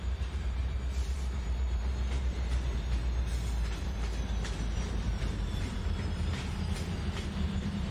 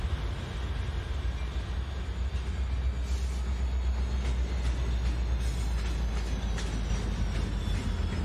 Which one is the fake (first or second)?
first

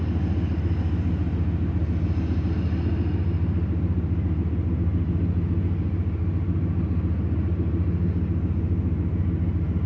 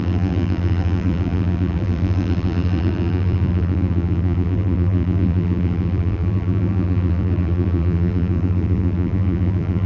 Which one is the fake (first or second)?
second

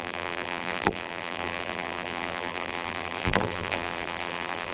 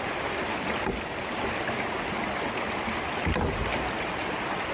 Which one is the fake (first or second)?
first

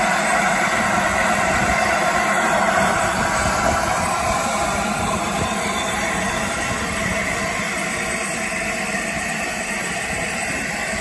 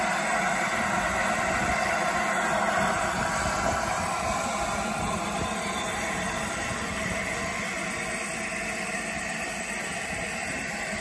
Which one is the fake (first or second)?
first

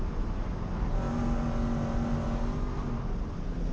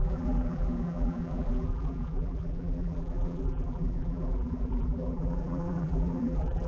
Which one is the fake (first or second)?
second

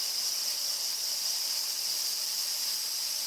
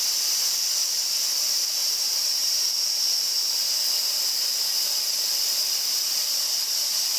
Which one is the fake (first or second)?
first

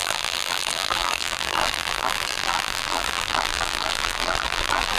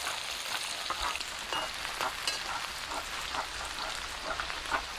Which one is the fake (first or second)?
first